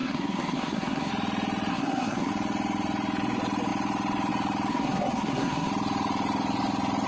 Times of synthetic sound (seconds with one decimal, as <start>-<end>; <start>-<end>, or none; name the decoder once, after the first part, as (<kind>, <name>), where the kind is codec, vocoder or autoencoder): 0.0-1.1 (codec, SNAC); 1.7-2.3; 4.7-5.7